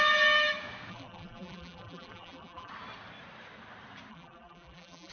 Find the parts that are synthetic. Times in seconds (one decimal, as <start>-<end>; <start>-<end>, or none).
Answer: 0.9-2.7; 4.1-5.1